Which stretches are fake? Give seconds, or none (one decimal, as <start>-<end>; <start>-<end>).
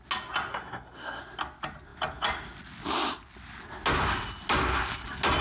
0.5-1.2